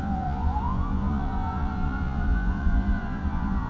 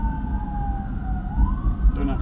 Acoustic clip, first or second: second